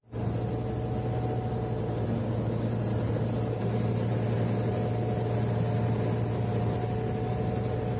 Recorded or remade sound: recorded